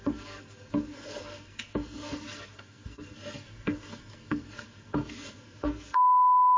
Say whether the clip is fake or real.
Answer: fake